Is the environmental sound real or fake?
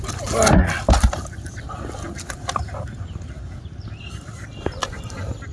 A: fake